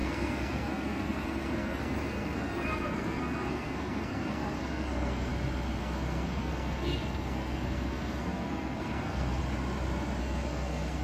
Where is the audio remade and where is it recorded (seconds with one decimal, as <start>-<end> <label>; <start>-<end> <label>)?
0.0-5.3 remade; 5.3-5.8 recorded; 5.8-9.4 remade; 9.4-10.2 recorded; 10.2-11.0 remade